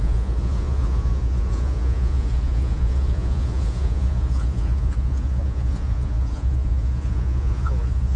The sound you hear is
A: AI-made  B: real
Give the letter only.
A